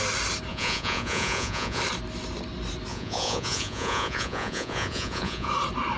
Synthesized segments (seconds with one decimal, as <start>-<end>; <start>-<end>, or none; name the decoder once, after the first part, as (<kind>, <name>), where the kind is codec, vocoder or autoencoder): 0.5-1.8 (vocoder, Vocos); 2.9-5.5